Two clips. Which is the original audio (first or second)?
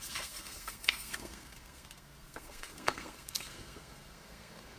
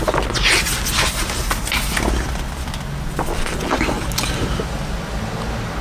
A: second